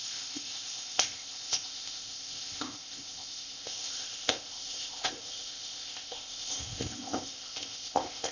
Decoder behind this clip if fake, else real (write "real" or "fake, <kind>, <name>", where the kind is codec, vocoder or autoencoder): fake, codec, ZipCodec